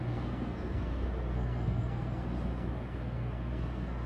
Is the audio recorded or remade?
remade